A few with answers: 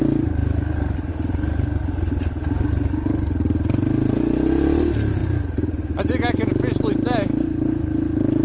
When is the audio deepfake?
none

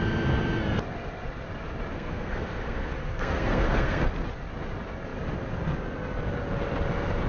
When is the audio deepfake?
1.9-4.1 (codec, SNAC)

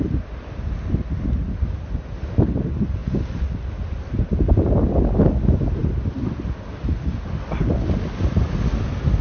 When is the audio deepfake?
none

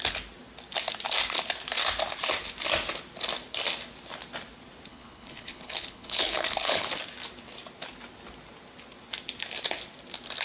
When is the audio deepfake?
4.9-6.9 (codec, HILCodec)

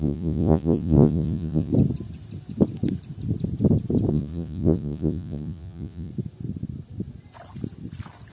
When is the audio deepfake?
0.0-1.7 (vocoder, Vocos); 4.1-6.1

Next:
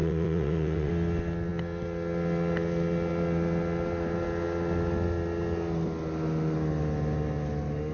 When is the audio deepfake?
0.0-0.9 (vocoder, Vocos)

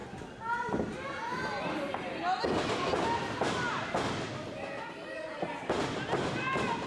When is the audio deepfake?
none